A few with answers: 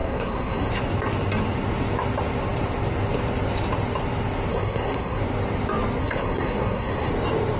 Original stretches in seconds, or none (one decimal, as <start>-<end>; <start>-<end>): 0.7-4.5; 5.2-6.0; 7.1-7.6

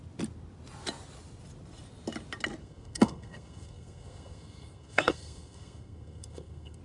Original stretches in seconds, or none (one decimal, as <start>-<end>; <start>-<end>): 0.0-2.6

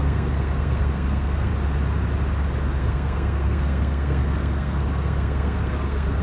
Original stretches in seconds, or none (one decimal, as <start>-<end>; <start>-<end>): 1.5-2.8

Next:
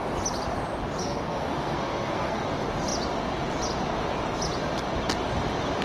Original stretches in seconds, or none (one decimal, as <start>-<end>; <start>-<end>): 0.0-1.0; 2.4-5.8

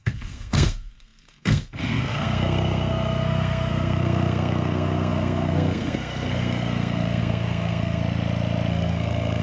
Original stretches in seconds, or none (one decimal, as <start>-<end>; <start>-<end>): 8.0-8.7